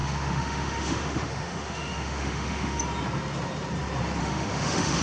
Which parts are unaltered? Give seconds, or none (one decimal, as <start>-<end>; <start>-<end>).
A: 2.8-4.2